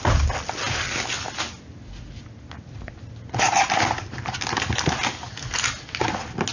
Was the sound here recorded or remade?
recorded